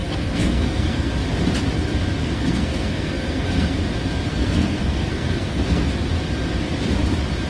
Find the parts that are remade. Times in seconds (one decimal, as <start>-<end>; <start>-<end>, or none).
0.0-1.1; 2.2-3.8; 4.3-5.9